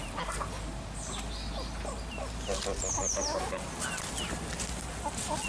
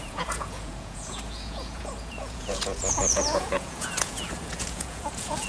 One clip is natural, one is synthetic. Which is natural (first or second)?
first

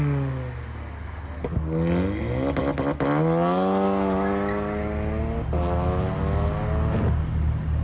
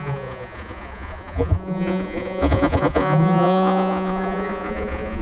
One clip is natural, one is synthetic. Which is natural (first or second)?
first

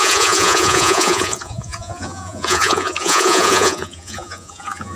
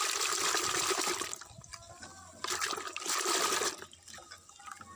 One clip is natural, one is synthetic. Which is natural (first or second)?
second